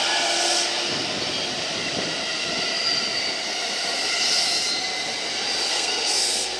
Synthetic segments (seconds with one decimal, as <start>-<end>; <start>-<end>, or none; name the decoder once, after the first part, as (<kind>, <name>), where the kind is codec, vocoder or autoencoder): 5.7-6.6 (codec, SNAC)